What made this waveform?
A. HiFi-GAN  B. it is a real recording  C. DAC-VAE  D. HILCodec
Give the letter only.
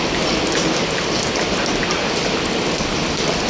B